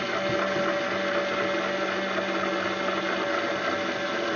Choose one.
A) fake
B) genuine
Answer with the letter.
B